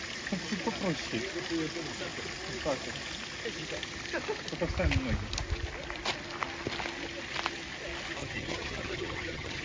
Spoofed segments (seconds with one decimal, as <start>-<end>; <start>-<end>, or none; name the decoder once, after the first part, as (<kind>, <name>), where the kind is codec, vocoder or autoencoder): 8.2-9.6 (vocoder, HiFi-GAN)